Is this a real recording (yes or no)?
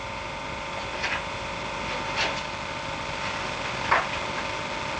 yes